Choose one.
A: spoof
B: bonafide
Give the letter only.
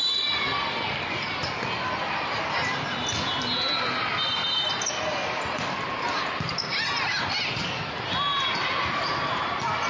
B